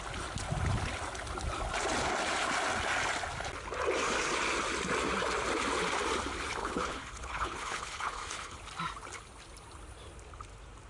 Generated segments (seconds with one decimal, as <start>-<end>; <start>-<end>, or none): 6.6-8.6